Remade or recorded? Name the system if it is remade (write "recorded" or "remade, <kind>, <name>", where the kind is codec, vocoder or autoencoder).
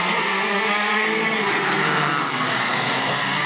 remade, codec, SNAC